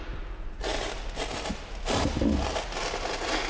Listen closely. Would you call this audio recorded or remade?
recorded